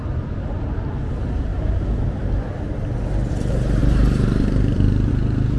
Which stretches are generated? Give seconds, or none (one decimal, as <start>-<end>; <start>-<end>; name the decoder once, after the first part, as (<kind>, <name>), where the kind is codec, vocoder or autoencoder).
0.9-1.5 (vocoder, BigVGAN v2); 3.3-5.6